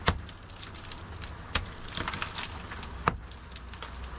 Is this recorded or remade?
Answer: recorded